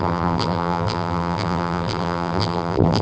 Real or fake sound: fake